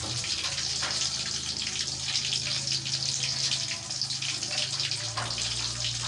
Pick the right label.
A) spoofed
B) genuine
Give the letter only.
B